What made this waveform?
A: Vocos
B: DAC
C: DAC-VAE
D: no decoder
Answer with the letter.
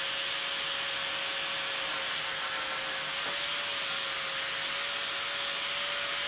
D